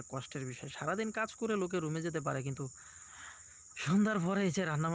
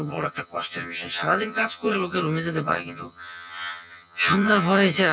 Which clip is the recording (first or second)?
first